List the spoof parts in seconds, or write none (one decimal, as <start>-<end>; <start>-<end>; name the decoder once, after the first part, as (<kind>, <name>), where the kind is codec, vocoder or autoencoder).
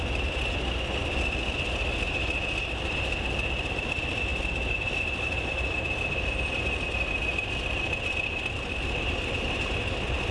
none